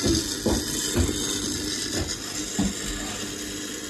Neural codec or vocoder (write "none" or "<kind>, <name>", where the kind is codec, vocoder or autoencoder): none